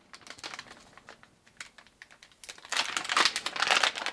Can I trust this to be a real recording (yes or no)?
yes